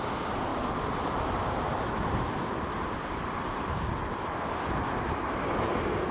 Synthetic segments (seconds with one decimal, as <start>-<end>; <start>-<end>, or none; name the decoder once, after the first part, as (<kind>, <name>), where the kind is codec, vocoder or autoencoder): none